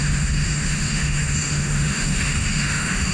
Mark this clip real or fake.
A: fake